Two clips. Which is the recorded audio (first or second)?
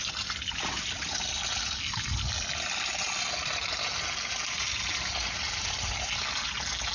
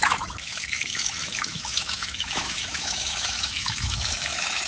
first